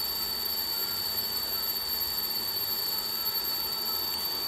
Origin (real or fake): fake